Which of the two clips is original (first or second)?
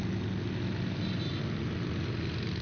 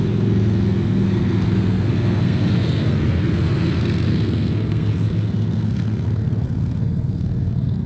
first